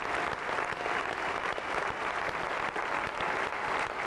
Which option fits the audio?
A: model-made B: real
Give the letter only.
B